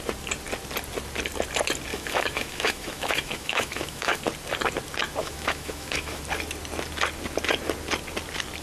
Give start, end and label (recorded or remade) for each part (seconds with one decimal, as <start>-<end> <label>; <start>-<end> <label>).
0.0-1.9 recorded; 1.9-4.2 remade; 4.2-5.2 recorded; 5.2-6.2 remade; 6.2-8.6 recorded